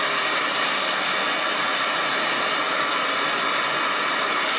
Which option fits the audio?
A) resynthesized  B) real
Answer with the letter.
B